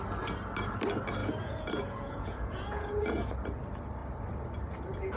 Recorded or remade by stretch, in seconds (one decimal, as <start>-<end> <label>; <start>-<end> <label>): 0.0-1.2 recorded; 1.2-3.3 remade; 3.3-5.2 recorded